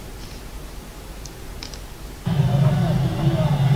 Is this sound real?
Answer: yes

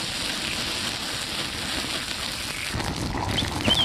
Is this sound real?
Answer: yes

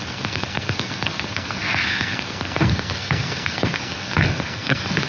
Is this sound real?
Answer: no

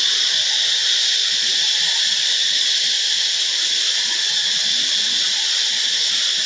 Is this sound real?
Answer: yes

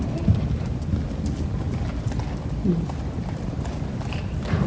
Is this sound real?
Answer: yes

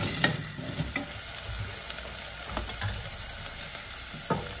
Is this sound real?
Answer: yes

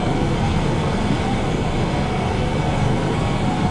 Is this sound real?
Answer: no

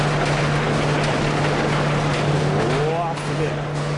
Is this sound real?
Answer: yes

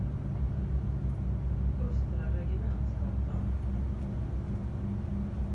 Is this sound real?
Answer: yes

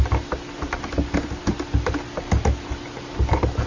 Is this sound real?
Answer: yes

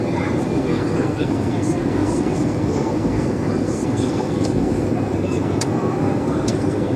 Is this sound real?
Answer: no